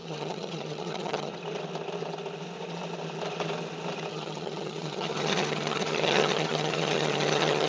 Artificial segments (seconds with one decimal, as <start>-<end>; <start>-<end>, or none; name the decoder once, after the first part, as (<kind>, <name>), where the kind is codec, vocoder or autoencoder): 0.0-1.3 (vocoder, HiFi-GAN); 4.1-7.7